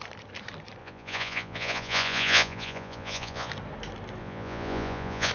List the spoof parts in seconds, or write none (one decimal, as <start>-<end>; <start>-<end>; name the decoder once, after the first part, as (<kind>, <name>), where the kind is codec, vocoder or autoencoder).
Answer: 0.8-3.5 (vocoder, Vocos); 4.2-5.3